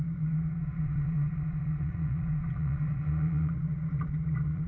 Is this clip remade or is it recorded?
remade